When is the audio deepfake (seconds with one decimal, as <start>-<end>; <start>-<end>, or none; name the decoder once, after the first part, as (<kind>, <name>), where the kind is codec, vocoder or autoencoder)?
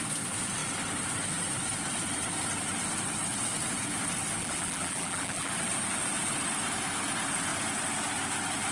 4.4-5.5 (vocoder, BigVGAN v2)